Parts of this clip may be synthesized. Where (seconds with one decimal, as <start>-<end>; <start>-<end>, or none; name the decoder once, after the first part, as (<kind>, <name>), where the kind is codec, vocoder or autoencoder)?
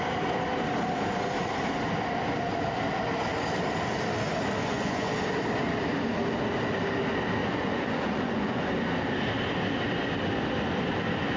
4.6-5.1 (vocoder, Vocos); 7.4-8.7